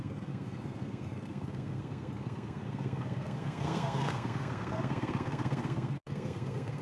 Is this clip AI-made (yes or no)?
yes